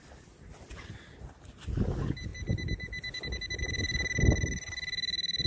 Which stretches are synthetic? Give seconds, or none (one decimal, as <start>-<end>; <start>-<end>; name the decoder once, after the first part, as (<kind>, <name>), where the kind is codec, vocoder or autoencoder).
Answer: none